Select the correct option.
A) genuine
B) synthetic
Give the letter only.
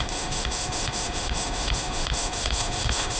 B